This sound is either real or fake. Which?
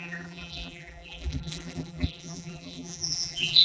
fake